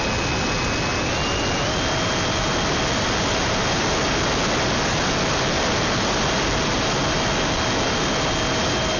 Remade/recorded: recorded